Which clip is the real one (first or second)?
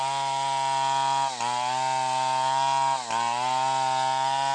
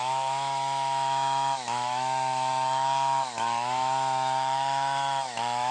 first